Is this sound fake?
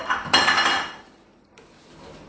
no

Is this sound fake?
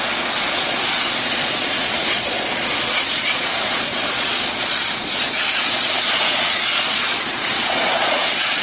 yes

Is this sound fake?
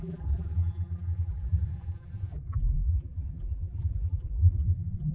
yes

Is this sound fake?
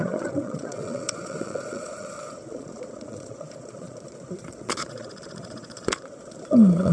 yes